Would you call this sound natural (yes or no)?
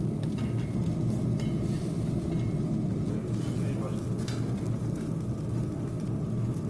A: yes